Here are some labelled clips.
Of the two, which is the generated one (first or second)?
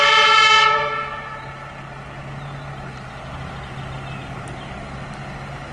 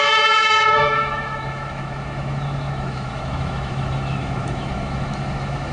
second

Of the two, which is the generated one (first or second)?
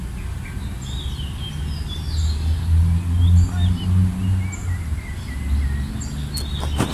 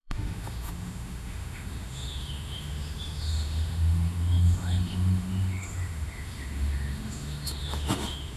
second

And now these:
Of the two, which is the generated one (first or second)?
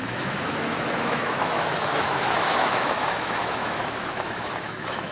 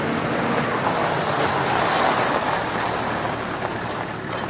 first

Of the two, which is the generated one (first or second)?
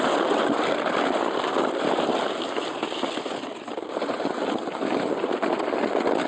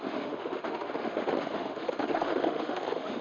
second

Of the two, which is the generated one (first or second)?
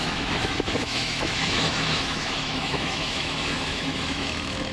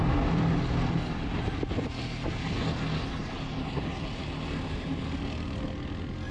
first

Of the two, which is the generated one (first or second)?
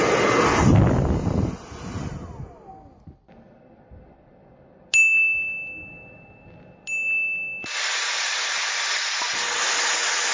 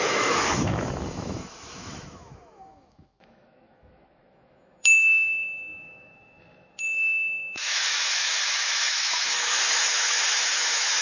second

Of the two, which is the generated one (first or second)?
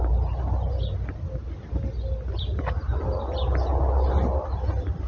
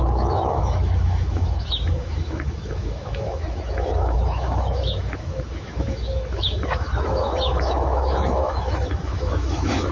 second